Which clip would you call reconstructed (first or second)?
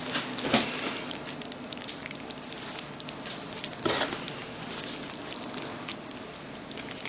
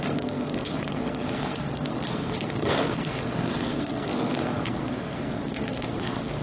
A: second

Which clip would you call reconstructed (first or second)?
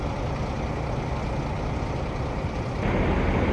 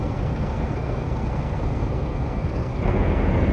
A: second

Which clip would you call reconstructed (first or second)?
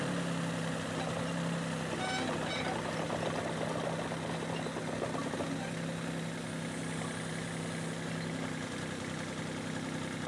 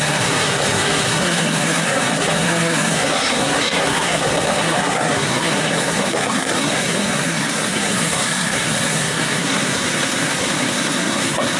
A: second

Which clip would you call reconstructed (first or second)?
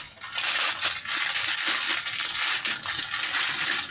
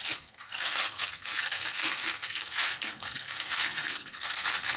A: second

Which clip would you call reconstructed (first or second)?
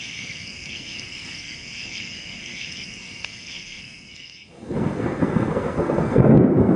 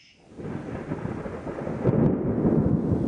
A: first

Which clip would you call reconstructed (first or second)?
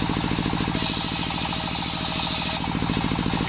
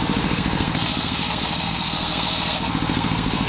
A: second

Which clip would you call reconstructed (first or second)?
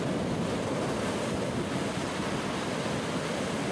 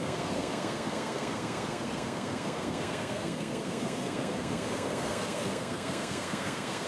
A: second